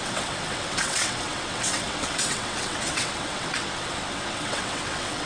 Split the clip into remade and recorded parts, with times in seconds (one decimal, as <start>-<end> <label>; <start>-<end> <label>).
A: 0.0-5.3 remade